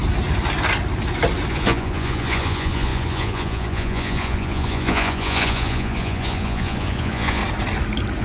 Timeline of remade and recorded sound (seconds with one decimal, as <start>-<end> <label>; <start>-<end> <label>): 0.0-1.5 recorded; 1.5-7.4 remade; 7.4-8.2 recorded